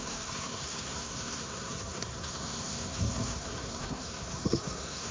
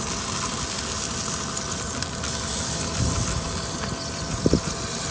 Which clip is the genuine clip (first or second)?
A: second